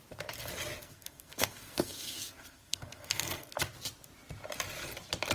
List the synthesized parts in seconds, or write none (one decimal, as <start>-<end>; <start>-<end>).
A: 0.8-3.6

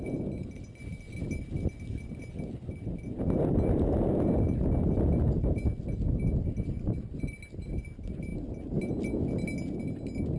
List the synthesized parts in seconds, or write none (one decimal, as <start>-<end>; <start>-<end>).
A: none

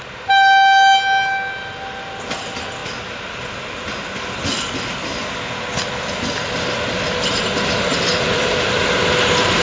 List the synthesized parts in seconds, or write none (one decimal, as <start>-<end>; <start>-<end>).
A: none

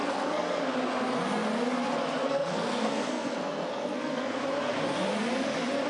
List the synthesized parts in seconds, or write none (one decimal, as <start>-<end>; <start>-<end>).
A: 0.0-0.6; 2.2-4.4

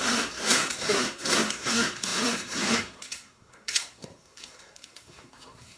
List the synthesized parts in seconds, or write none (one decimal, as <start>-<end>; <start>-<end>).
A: 0.0-5.8